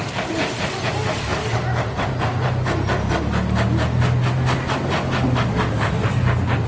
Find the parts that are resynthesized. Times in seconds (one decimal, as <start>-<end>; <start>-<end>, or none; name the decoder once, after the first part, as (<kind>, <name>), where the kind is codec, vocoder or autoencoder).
none